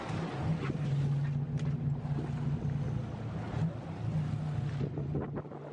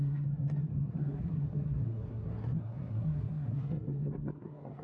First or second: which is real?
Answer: first